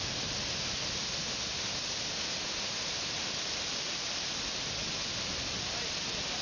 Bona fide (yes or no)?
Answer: yes